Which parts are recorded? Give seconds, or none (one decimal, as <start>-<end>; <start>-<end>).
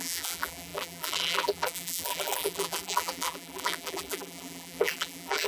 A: none